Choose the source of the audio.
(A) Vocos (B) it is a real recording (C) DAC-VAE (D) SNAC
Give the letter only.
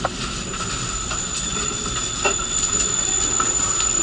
B